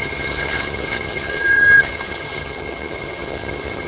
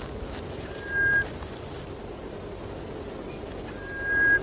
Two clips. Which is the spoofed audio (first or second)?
first